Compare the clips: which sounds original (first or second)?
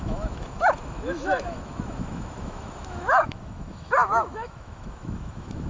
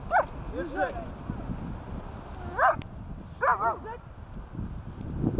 second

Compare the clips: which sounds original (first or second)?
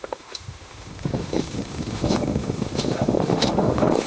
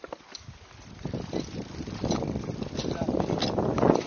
second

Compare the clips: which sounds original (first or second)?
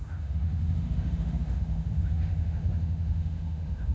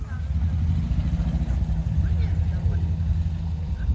second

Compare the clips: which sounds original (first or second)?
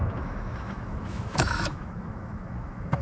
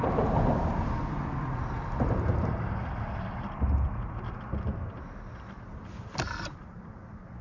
second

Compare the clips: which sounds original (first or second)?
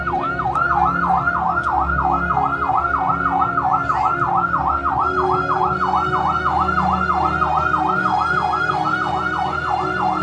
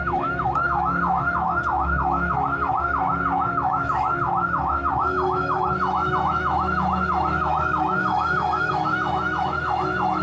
first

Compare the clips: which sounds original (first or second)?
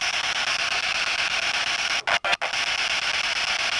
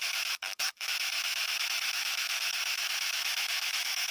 first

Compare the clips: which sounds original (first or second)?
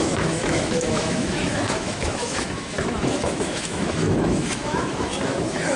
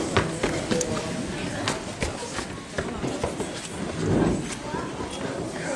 second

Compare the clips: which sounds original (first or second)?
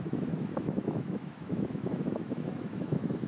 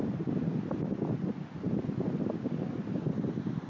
second